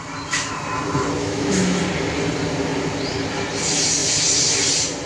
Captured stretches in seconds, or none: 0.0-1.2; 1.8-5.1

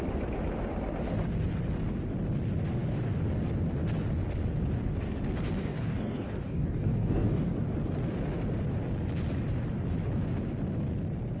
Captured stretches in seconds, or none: 0.0-5.6; 7.5-11.4

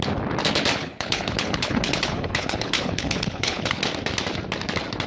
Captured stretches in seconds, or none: 0.0-0.8; 3.8-5.1

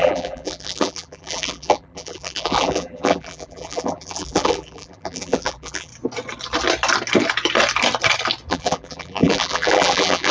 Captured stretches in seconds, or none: 5.9-8.5

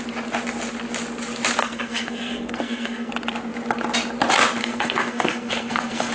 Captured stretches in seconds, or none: 0.0-1.6; 3.1-4.6

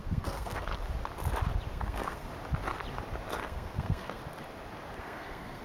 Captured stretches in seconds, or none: 0.7-1.7; 2.3-3.4; 4.2-5.0

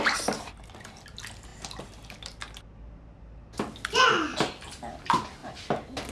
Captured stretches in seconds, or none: 0.0-6.1